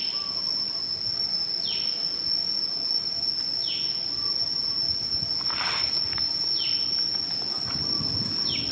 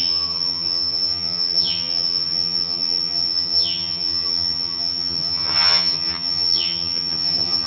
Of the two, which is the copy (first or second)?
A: second